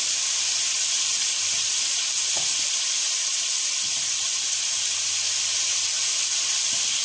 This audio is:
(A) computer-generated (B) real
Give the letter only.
B